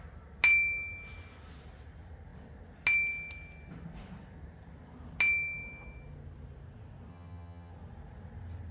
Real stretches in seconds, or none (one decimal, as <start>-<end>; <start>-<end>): 0.0-7.1; 7.7-8.7